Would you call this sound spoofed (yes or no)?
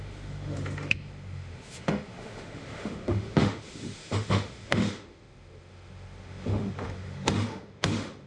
yes